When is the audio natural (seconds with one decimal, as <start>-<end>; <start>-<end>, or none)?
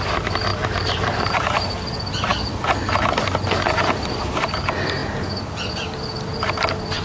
0.0-0.5; 1.8-7.0